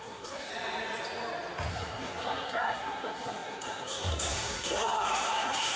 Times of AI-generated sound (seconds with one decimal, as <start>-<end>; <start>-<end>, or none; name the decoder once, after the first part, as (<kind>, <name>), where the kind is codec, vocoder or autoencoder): 0.0-0.5 (codec, SNAC); 1.7-5.8